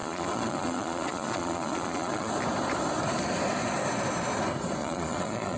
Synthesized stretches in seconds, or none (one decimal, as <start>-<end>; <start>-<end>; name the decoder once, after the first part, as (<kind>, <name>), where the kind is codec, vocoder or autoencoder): 0.0-2.3 (vocoder, Vocos); 4.8-5.6